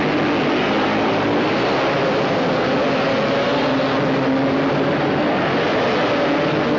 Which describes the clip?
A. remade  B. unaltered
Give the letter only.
B